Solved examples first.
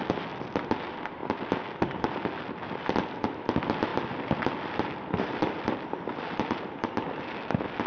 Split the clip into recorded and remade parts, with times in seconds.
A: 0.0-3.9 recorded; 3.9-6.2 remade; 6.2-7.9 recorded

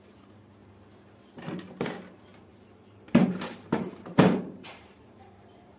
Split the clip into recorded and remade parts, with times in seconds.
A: 0.0-2.3 recorded; 2.3-5.8 remade